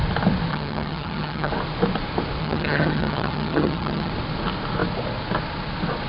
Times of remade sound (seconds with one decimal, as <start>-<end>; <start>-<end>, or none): 0.5-1.5; 2.4-4.1